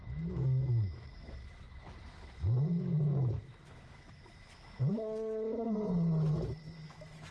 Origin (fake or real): fake